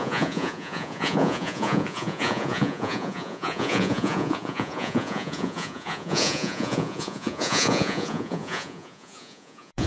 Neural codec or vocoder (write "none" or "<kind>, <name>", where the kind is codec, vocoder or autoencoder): vocoder, Vocos